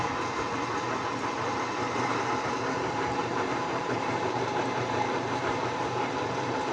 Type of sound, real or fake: fake